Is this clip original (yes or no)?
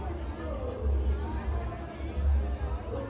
yes